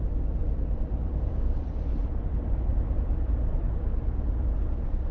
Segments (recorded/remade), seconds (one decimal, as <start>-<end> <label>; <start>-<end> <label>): 0.0-1.9 recorded; 1.9-5.1 remade